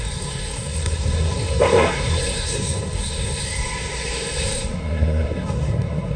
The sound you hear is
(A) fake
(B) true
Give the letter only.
A